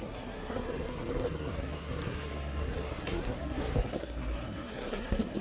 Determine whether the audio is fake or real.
fake